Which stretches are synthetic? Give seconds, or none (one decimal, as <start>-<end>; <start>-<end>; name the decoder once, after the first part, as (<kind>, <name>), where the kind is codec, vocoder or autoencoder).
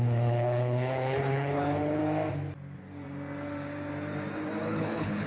0.0-2.0 (codec, HILCodec); 4.6-5.3